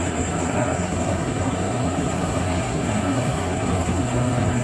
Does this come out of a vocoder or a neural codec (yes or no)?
yes